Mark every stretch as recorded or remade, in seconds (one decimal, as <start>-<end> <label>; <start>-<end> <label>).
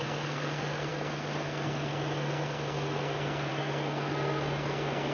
0.0-5.1 remade